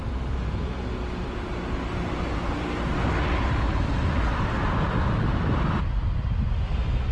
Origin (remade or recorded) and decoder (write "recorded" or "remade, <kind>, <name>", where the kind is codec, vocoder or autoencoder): recorded